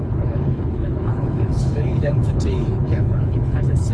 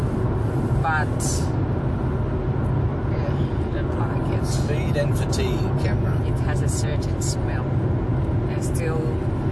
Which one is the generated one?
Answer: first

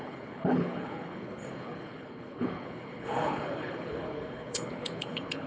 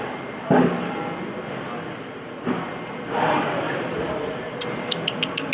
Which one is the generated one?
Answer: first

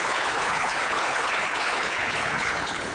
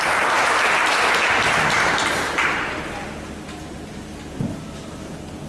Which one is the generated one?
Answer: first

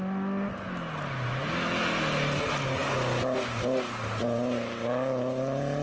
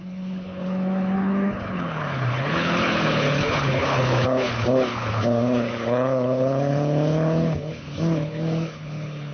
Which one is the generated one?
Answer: second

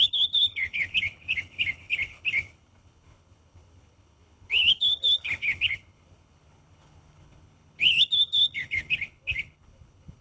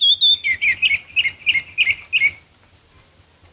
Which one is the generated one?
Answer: first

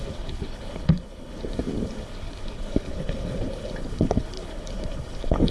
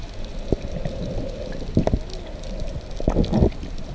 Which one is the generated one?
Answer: first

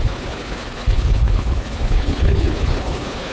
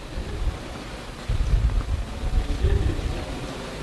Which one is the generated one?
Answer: first